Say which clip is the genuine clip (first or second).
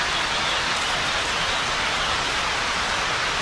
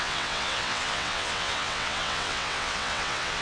first